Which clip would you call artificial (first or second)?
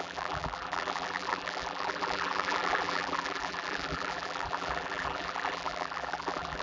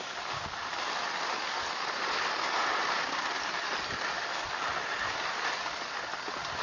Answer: first